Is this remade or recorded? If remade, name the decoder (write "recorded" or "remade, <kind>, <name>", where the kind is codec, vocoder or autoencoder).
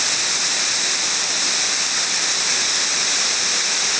recorded